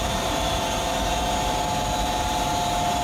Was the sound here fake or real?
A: real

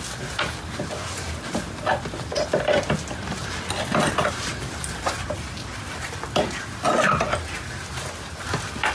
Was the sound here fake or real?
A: real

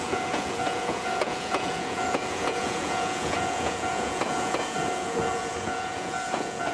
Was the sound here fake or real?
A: fake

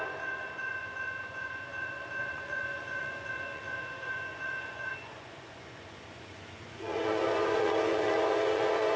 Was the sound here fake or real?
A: fake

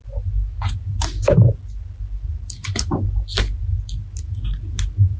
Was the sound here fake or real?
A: real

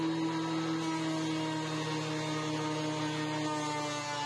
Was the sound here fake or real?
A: real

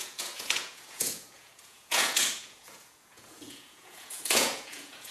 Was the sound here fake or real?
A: fake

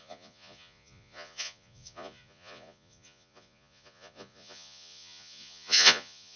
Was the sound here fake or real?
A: fake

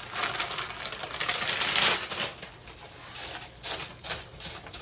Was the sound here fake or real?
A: real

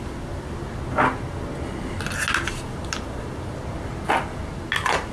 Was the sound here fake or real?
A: real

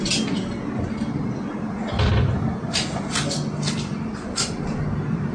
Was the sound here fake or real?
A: real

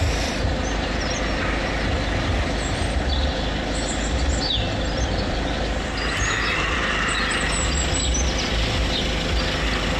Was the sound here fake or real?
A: real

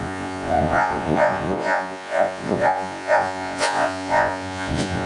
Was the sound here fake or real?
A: fake